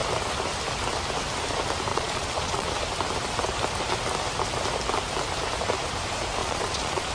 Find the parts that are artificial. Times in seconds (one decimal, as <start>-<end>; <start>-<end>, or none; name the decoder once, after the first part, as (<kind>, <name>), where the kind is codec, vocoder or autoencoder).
1.9-2.7 (vocoder, Vocos); 6.4-7.1

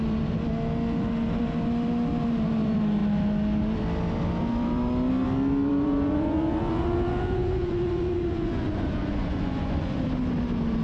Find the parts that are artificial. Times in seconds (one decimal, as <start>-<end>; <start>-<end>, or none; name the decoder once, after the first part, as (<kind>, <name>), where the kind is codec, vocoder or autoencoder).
5.7-10.0 (vocoder, Vocos)

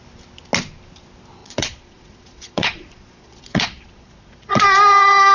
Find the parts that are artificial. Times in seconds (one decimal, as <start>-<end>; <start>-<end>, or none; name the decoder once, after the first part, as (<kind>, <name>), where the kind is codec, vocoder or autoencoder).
1.4-4.6 (vocoder, Vocos)

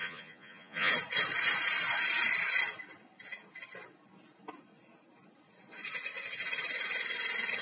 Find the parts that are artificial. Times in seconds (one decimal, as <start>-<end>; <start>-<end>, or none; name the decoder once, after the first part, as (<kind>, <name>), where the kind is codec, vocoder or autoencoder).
0.0-0.9 (vocoder, Vocos)

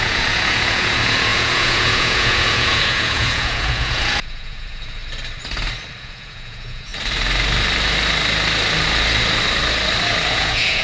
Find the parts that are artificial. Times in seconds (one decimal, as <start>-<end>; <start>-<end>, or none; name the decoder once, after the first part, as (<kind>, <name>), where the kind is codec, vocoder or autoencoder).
0.0-5.0 (vocoder, Vocos); 6.0-6.9; 10.3-10.8

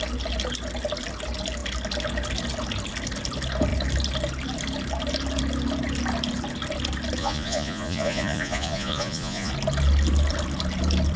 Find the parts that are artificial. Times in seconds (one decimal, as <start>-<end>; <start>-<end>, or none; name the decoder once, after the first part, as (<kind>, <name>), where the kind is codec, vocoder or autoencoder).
7.2-9.5 (vocoder, Vocos)